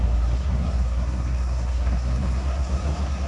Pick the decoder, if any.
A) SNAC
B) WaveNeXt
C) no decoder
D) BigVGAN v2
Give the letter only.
A